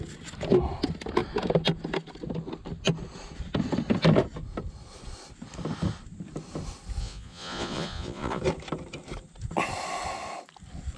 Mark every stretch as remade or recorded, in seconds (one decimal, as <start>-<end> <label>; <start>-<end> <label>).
0.0-7.0 recorded; 7.0-8.4 remade; 8.4-11.0 recorded